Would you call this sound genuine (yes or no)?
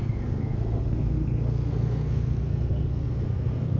no